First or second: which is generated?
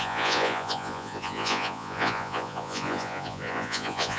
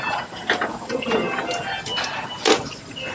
first